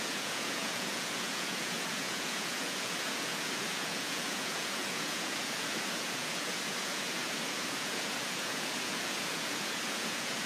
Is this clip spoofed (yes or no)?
yes